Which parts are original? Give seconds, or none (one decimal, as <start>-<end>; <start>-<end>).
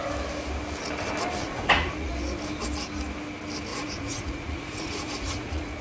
0.0-1.4; 2.1-3.7